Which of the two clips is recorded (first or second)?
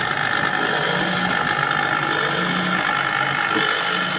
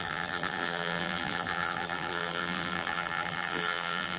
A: first